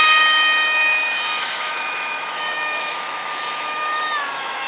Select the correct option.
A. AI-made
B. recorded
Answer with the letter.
A